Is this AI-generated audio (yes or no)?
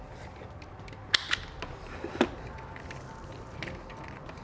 no